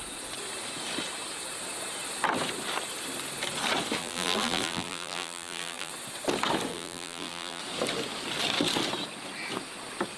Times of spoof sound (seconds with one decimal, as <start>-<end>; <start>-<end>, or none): 4.0-5.9; 6.7-7.6